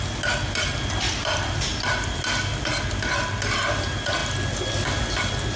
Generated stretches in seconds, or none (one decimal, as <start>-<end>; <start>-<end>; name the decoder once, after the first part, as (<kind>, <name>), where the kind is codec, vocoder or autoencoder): none